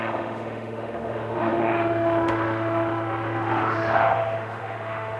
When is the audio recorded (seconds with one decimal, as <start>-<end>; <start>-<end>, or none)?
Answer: none